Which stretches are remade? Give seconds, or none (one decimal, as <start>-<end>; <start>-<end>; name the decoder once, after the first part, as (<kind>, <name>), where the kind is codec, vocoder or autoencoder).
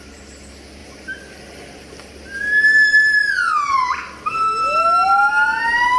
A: none